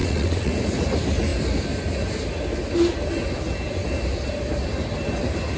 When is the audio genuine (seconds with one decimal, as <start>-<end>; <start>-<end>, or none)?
0.5-5.6